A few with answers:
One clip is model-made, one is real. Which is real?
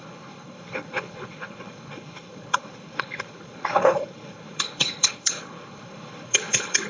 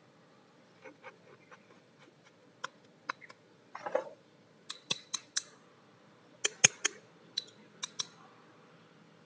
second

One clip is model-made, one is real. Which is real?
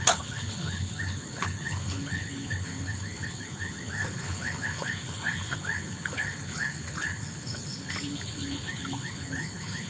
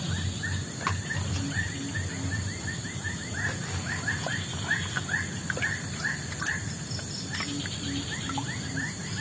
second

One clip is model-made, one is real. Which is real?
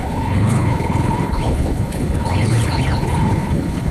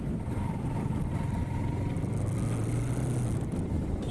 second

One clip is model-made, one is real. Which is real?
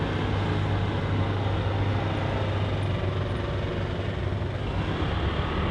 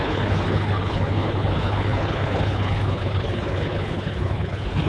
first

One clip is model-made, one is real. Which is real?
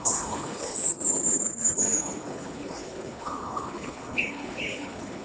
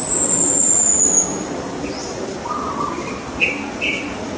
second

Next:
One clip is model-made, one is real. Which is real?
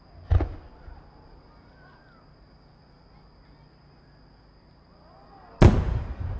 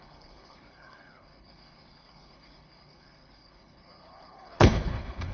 first